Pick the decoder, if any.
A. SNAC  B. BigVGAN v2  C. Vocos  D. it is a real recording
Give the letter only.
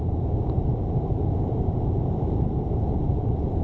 B